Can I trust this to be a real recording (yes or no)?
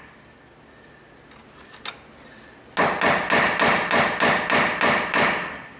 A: yes